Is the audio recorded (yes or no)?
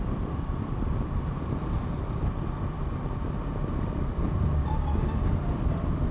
no